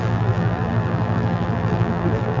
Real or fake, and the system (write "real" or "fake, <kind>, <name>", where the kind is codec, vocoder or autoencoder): fake, vocoder, BigVGAN v2